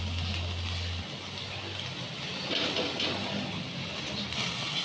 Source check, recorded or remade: recorded